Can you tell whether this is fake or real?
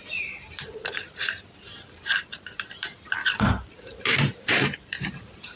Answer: fake